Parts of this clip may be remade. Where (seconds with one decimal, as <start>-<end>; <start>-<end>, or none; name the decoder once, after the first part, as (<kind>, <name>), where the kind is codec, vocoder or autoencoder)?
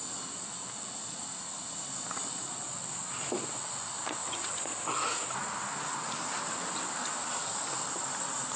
1.0-1.9 (vocoder, Vocos); 4.2-4.8